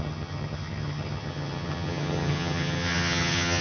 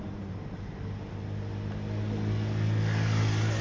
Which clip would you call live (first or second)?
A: second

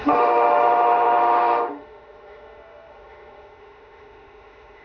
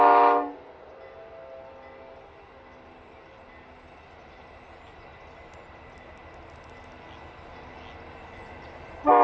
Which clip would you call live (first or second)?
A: second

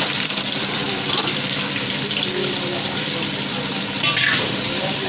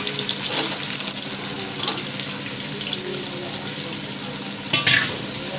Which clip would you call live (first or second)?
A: second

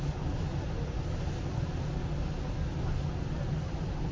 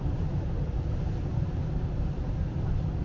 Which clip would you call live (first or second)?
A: first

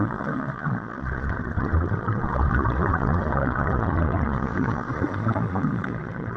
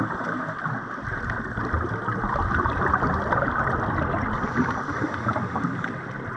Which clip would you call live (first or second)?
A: second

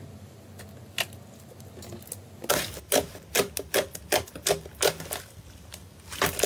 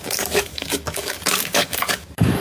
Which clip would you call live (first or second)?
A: first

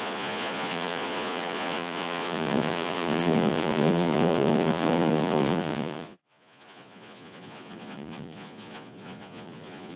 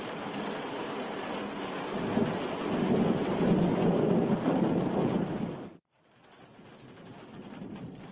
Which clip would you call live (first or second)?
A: second